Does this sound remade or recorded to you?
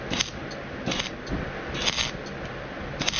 recorded